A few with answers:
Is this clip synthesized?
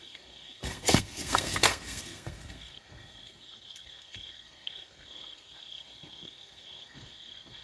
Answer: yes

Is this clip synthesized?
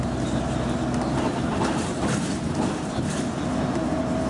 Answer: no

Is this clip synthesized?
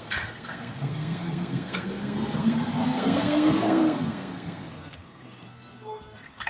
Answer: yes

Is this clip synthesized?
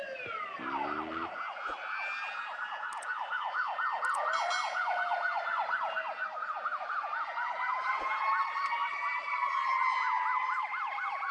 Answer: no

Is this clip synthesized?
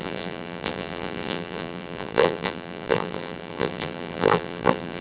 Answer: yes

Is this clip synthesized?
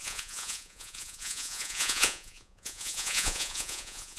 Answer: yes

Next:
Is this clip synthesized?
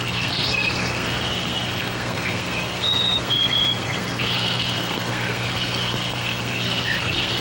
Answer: yes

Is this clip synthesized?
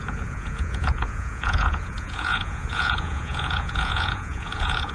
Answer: yes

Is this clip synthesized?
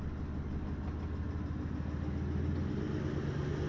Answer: no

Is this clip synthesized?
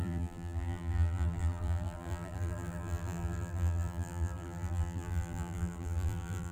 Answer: yes